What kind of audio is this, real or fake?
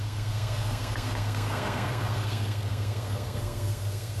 fake